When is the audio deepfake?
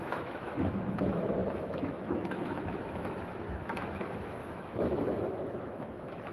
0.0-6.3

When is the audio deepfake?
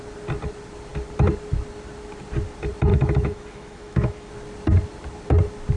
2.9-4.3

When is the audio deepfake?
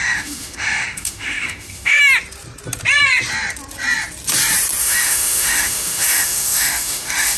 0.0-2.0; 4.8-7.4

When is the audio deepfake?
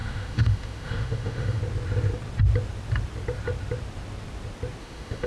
0.0-1.6; 4.8-5.3